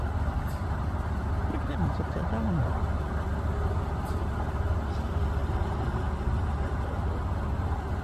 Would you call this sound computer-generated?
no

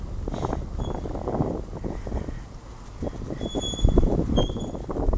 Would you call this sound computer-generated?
no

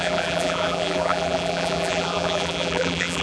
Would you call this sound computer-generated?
yes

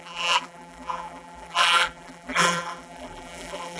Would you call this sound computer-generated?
yes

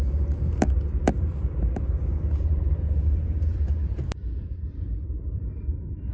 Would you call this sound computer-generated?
yes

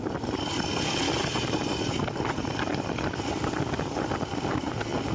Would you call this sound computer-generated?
yes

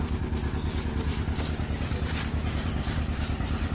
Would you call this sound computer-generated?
yes